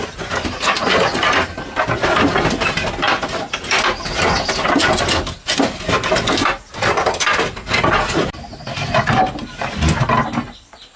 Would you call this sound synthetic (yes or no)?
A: no